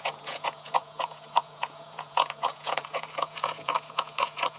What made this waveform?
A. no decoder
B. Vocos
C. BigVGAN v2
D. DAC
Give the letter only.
B